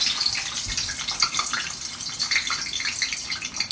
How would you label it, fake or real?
real